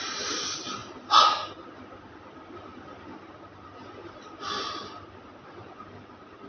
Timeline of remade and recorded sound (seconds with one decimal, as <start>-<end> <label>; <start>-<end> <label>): 0.0-6.5 recorded